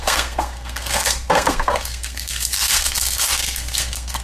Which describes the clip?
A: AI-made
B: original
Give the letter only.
A